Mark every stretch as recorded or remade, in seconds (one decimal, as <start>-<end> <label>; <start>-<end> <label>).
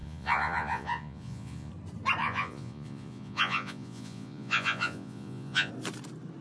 0.0-1.7 remade; 1.7-2.2 recorded; 2.2-5.7 remade; 5.7-6.4 recorded